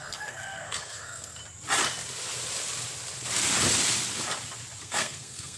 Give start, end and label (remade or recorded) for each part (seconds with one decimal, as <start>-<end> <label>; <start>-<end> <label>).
0.0-1.4 remade; 1.4-4.8 recorded; 4.8-5.6 remade